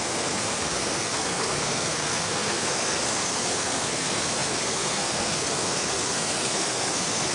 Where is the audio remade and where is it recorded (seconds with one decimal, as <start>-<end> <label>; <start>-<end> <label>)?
0.0-7.3 remade